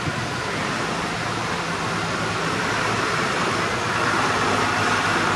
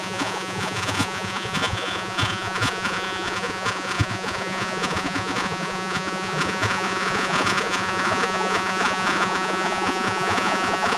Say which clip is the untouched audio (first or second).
first